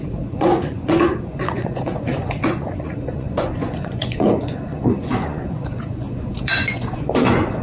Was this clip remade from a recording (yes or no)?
yes